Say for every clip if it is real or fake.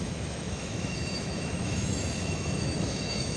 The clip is fake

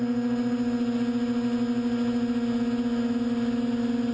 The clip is real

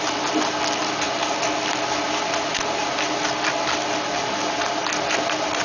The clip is real